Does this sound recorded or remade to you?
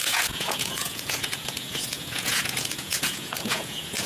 remade